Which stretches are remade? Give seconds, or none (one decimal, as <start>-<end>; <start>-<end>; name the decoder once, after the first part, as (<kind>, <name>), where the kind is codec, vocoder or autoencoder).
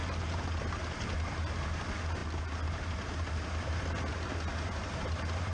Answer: 0.0-0.8 (vocoder, BigVGAN v2); 4.5-5.5